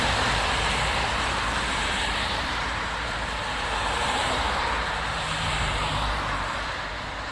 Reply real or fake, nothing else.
fake